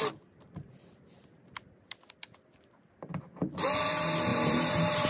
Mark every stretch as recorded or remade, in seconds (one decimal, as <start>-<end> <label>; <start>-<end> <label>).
0.0-4.3 recorded; 4.3-5.1 remade